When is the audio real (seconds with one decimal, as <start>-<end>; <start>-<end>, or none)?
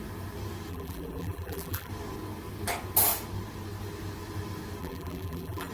0.0-0.7; 1.9-4.8